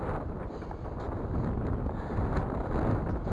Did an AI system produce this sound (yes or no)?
no